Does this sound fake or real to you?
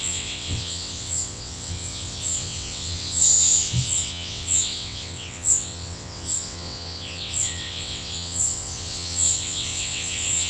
fake